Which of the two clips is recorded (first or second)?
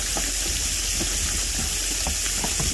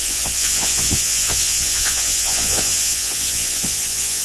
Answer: first